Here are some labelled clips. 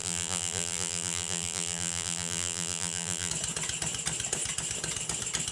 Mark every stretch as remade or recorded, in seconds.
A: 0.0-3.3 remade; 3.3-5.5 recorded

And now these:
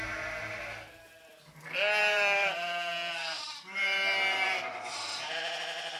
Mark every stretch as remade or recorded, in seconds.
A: 0.0-2.0 recorded; 2.0-5.6 remade; 5.6-6.0 recorded

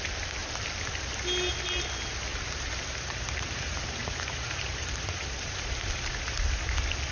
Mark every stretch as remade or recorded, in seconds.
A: 0.0-2.3 recorded; 2.3-5.7 remade; 5.7-7.1 recorded

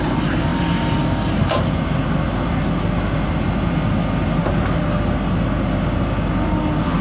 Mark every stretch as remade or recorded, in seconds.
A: 0.0-7.0 recorded

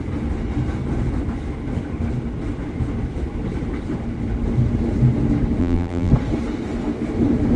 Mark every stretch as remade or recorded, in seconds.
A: 0.0-5.6 recorded; 5.6-6.1 remade; 6.1-7.6 recorded

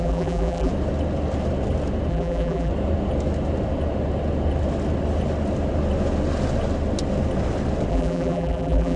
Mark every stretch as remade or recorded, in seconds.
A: 0.0-0.7 remade; 0.7-2.1 recorded; 2.1-2.7 remade; 2.7-7.9 recorded; 7.9-9.0 remade